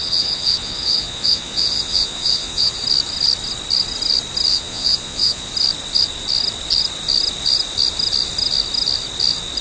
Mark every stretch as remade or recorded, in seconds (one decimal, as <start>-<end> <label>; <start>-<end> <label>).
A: 0.0-2.8 remade; 2.8-4.5 recorded; 4.5-5.5 remade; 5.5-9.6 recorded